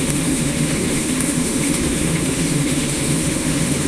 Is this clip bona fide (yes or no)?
no